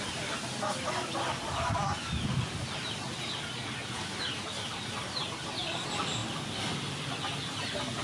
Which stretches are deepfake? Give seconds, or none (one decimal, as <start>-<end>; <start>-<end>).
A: none